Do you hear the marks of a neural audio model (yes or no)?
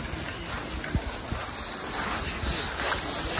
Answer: no